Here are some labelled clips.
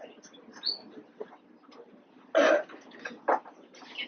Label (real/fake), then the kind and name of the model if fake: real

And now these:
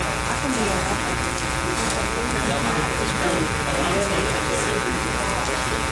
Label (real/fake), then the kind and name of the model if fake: fake, vocoder, BigVGAN v2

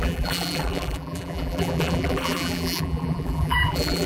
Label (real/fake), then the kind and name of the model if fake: fake, vocoder, BigVGAN v2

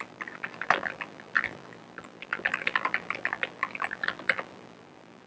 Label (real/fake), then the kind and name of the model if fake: fake, vocoder, BigVGAN v2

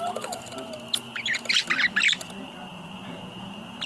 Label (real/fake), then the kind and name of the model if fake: real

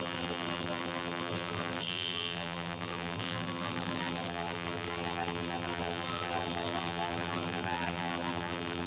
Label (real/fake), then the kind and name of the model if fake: fake, vocoder, BigVGAN v2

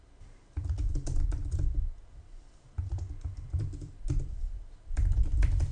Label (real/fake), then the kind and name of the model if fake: fake, vocoder, BigVGAN v2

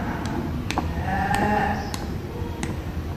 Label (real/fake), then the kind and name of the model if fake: fake, vocoder, BigVGAN v2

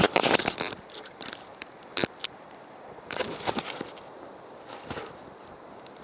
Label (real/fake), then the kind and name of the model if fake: fake, vocoder, BigVGAN v2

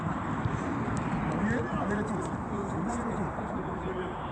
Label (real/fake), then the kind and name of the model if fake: fake, vocoder, BigVGAN v2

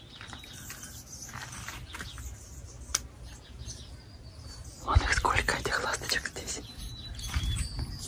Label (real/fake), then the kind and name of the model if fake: fake, vocoder, BigVGAN v2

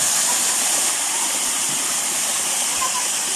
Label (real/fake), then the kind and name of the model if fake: real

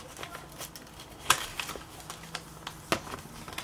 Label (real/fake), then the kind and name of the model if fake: real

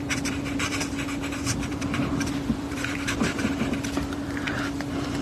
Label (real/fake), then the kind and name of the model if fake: fake, vocoder, BigVGAN v2